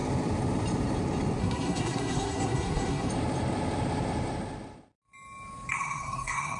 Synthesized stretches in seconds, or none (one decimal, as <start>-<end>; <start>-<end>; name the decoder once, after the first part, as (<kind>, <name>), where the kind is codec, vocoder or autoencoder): 1.4-3.1 (codec, SNAC); 5.7-6.6